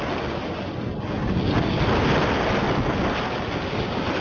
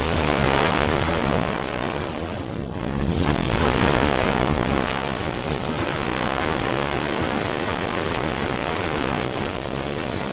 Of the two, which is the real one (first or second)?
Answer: first